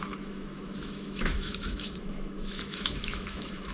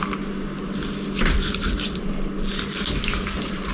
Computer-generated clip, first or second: first